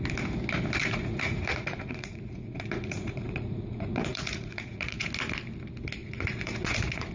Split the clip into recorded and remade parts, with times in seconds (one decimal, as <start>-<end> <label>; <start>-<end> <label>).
0.0-0.8 recorded; 0.8-5.1 remade; 5.1-6.0 recorded; 6.0-7.1 remade